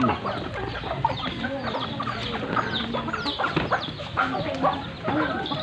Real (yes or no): yes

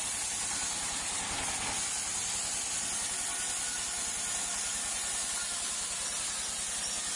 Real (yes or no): yes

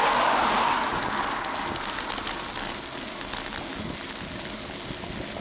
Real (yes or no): yes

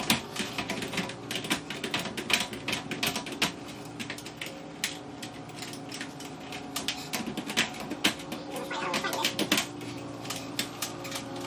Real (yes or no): yes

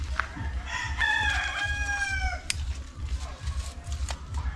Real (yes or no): yes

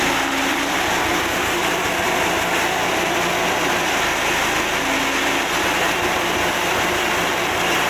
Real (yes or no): yes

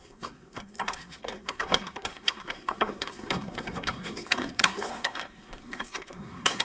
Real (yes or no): no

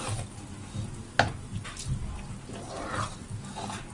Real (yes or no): yes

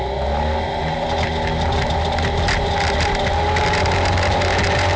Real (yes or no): yes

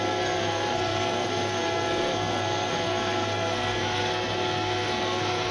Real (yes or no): no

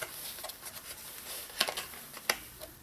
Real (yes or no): yes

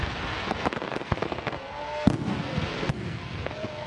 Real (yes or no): no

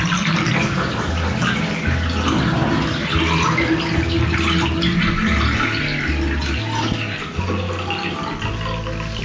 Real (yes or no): yes